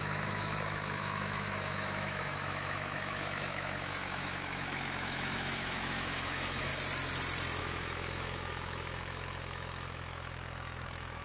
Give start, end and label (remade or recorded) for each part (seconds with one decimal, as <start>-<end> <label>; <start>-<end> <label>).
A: 0.0-6.7 remade; 6.7-7.6 recorded; 7.6-11.2 remade